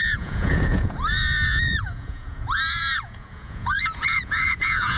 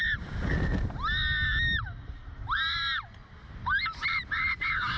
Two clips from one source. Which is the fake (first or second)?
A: first